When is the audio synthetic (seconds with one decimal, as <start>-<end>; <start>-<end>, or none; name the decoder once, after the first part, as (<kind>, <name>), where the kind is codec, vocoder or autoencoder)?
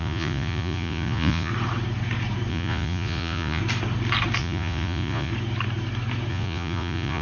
0.0-1.5 (vocoder, Vocos); 2.5-3.6; 4.4-5.3; 6.3-7.2